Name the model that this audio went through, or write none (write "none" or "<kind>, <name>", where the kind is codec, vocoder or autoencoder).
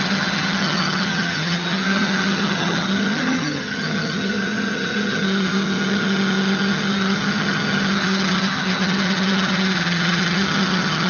vocoder, HiFi-GAN